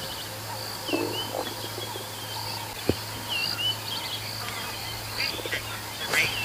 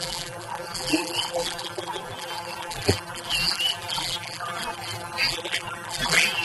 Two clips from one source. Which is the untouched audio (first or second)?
first